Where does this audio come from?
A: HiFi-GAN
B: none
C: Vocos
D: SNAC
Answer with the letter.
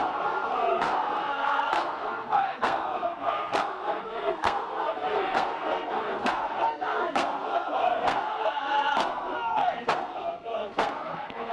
D